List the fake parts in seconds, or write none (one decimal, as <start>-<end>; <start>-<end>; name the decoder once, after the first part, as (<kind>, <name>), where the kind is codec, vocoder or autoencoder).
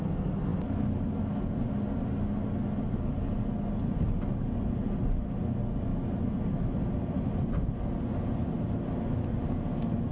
none